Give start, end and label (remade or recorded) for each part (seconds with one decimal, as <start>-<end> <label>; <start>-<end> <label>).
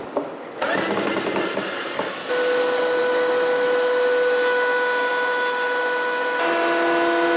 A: 0.0-7.4 recorded